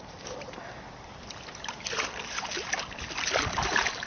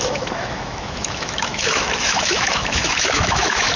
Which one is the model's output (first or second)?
second